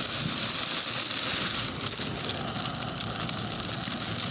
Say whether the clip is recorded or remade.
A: recorded